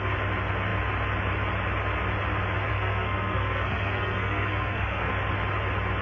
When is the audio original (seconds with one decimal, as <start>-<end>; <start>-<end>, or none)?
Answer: 0.0-2.7; 5.1-6.0